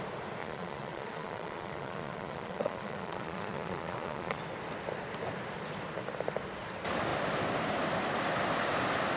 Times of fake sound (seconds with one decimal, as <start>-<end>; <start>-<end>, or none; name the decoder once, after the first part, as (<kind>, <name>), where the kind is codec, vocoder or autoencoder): 0.4-4.4 (vocoder, Vocos)